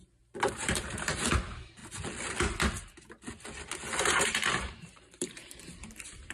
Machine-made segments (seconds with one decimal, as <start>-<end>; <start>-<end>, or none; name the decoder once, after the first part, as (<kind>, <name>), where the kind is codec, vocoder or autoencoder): 0.0-1.8 (vocoder, BigVGAN v2); 4.1-6.3